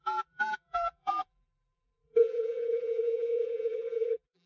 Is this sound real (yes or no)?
no